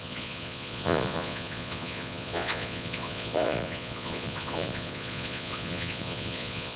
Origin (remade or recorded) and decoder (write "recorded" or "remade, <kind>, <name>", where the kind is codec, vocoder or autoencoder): remade, vocoder, Vocos